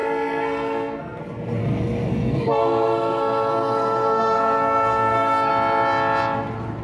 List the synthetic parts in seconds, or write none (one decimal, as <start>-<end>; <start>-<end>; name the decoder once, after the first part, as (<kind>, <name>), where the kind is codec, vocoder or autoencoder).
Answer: 0.0-1.2 (codec, SNAC); 1.6-5.5